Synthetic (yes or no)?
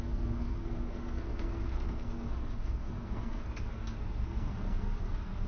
yes